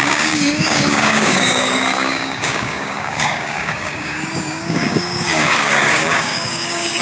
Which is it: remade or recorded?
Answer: remade